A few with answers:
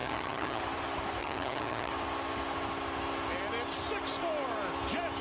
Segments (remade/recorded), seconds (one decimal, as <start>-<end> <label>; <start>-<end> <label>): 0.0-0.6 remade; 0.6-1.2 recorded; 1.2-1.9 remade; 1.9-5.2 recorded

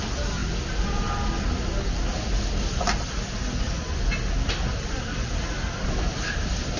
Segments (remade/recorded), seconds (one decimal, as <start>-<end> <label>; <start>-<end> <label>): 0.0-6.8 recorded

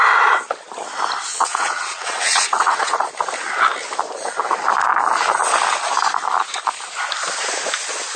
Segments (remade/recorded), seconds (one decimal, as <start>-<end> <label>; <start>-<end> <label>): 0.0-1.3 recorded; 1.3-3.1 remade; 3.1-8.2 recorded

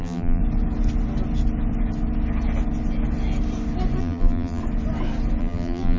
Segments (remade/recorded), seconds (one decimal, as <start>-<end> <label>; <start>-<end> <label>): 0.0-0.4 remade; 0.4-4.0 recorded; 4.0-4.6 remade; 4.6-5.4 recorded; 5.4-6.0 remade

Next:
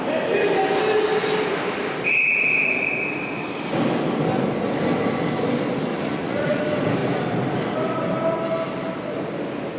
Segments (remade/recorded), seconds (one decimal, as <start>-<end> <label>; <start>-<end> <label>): 0.0-5.9 recorded; 5.9-6.6 remade; 6.6-9.8 recorded